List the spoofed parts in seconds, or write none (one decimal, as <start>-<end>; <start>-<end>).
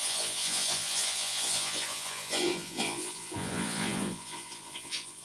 0.0-5.2